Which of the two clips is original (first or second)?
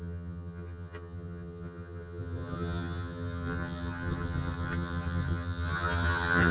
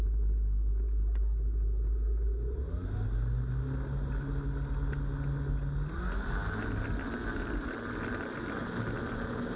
second